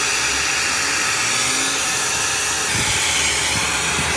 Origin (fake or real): real